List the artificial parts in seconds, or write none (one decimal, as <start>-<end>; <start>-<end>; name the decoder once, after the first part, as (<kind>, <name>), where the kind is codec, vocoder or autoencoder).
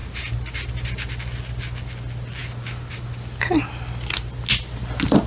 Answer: none